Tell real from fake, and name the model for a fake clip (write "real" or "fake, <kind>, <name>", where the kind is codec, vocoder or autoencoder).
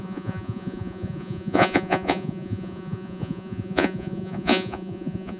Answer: fake, vocoder, Vocos